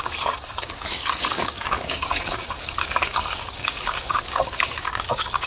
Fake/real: fake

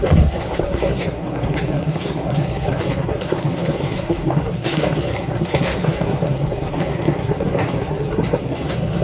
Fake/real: fake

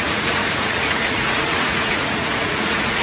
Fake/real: fake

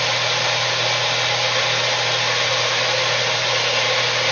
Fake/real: real